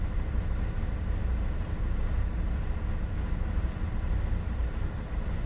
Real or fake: real